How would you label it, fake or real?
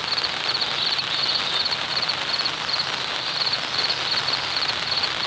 real